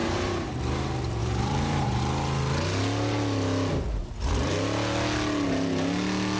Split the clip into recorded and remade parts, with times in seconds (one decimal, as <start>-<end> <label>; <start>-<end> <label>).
0.0-0.6 remade; 0.6-1.2 recorded; 1.2-2.0 remade; 2.0-6.4 recorded